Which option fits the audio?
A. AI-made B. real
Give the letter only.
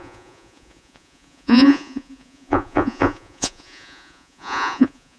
A